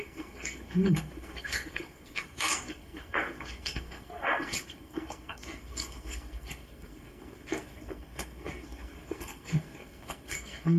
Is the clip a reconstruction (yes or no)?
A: yes